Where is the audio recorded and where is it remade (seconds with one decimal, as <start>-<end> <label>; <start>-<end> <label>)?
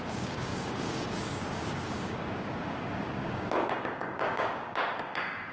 0.0-5.5 remade